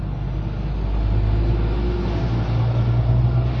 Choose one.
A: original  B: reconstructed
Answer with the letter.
A